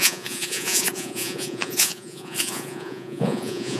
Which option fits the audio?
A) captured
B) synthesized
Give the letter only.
B